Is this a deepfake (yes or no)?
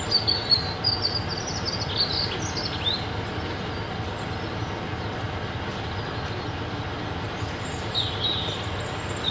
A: no